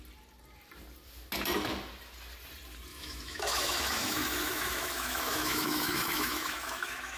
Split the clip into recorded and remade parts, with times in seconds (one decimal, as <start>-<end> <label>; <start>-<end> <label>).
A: 0.0-2.9 recorded; 2.9-7.2 remade